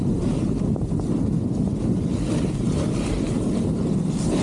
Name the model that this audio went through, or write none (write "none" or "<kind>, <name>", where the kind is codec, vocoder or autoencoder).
none